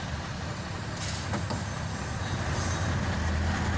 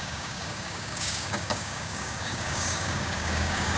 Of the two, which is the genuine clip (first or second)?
first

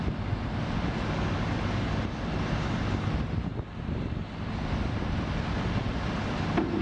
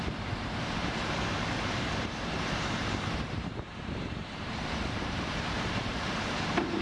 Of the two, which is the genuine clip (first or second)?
first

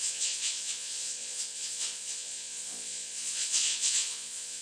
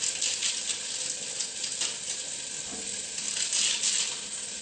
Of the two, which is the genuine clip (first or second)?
second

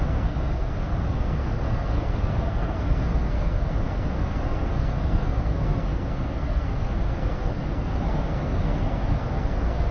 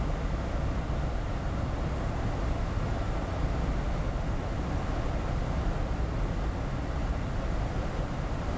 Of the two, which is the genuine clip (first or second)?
second